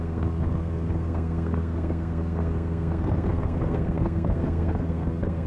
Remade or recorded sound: remade